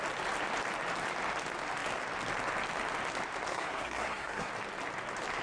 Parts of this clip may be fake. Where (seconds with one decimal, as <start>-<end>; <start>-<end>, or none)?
3.5-4.5